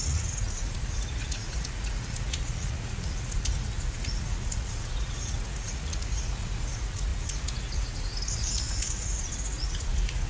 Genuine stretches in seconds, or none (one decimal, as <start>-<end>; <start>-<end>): none